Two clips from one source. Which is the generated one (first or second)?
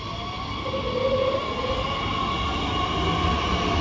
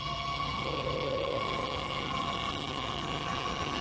second